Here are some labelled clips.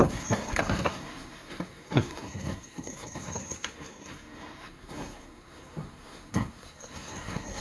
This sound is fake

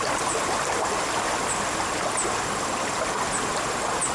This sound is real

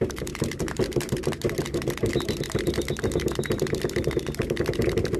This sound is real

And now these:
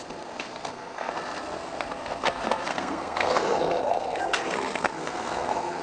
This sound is fake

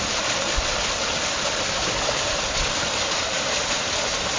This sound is real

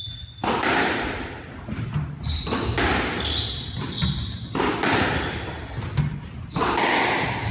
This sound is real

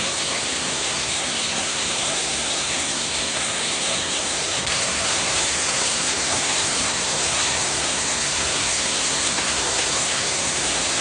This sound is fake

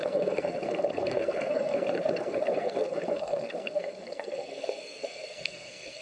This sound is fake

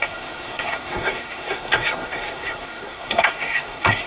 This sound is fake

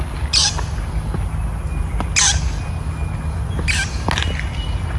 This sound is real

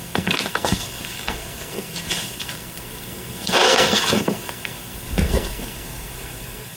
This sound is fake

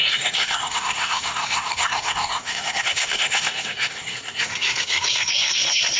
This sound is fake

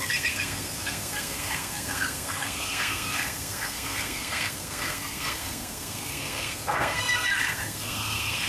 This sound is fake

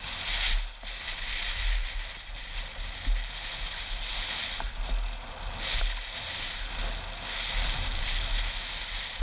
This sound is real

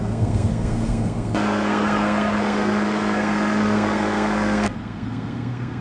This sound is fake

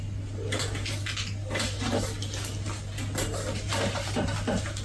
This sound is real